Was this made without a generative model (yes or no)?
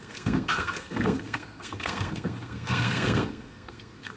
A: no